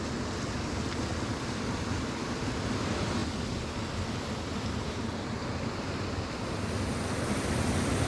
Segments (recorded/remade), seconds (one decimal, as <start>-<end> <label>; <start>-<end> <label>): 0.0-8.1 recorded